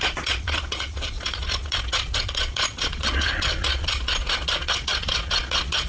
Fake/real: fake